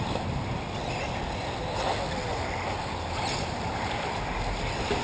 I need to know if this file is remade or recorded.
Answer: recorded